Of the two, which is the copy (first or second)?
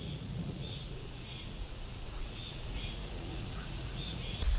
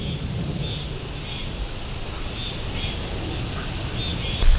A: first